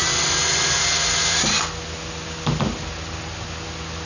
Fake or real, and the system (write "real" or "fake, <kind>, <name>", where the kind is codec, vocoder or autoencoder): real